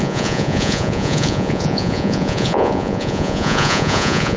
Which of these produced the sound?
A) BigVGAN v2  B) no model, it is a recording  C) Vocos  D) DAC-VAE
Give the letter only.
C